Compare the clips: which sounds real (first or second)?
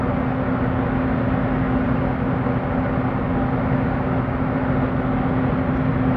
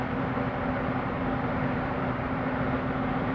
first